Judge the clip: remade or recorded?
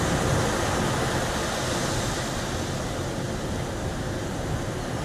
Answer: recorded